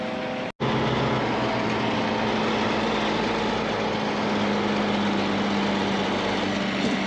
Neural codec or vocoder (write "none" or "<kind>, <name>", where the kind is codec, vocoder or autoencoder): none